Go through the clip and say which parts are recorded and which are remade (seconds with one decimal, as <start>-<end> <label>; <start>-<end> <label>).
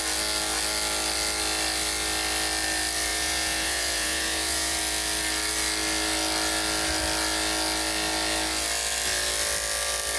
0.0-3.1 recorded; 3.1-4.8 remade; 4.8-10.2 recorded